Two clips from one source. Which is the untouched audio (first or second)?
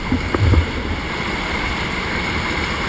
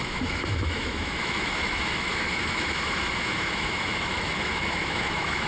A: first